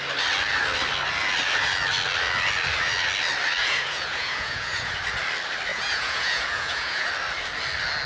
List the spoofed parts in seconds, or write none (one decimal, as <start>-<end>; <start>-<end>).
3.6-4.9; 5.7-7.1